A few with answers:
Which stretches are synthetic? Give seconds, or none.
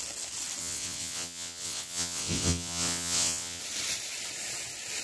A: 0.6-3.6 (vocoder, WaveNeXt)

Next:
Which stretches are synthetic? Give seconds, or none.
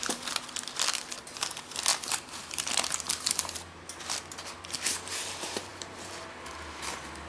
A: none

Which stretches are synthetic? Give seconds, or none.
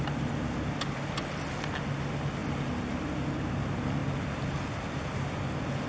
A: none